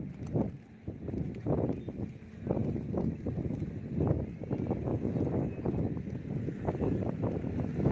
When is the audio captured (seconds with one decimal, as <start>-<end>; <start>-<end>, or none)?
0.0-7.9